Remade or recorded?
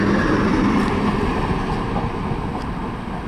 recorded